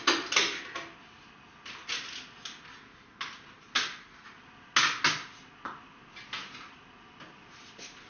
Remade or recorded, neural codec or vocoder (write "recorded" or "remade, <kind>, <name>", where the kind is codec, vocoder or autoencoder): recorded